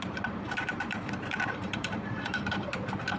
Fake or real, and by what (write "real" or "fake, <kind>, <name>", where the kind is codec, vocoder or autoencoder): fake, vocoder, BigVGAN v2